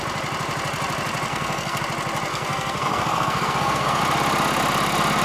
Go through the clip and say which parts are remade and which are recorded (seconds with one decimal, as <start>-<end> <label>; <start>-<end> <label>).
0.0-1.3 recorded; 1.3-1.8 remade; 1.8-2.3 recorded; 2.3-4.0 remade; 4.0-5.2 recorded